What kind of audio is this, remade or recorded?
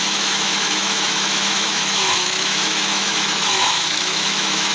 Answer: remade